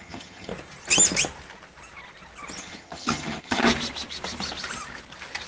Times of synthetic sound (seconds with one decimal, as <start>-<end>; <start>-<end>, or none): 0.0-0.5; 2.6-3.6